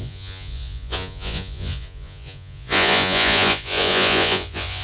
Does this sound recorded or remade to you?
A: remade